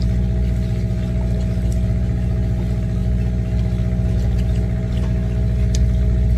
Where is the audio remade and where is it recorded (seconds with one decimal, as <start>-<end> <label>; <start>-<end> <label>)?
0.0-6.4 recorded